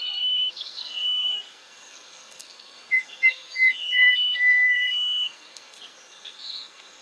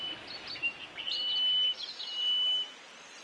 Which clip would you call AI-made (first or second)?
first